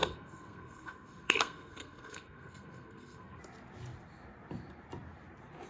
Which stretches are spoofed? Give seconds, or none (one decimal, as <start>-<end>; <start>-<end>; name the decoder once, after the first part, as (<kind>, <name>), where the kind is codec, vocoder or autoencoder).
0.0-3.4 (codec, SNAC)